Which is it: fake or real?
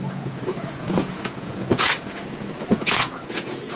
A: fake